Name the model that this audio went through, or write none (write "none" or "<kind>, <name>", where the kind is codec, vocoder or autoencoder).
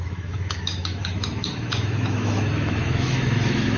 autoencoder, DAC-VAE